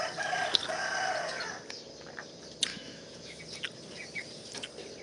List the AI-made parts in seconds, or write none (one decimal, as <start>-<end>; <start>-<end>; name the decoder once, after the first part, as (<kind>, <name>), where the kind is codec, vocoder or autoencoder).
2.7-3.4 (autoencoder, DAC-VAE)